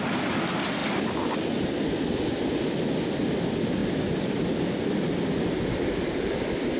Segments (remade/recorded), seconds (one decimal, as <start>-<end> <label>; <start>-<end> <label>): 0.0-6.8 recorded